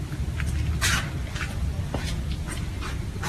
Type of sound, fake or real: real